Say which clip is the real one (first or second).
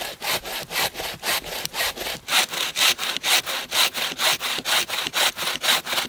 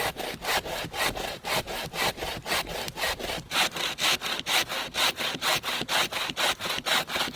first